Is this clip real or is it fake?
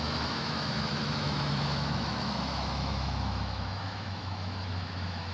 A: fake